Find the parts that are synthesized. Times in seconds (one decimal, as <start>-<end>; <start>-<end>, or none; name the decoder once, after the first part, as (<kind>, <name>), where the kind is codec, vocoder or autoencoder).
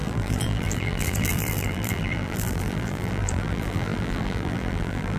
0.0-5.2 (vocoder, BigVGAN v2)